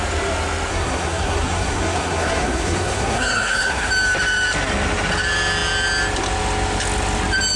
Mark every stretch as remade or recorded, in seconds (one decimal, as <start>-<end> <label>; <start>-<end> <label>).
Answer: 0.0-0.7 recorded; 0.7-3.9 remade; 3.9-7.6 recorded